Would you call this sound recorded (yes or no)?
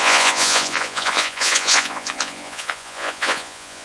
no